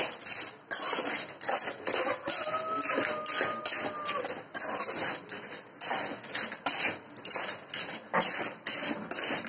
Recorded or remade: recorded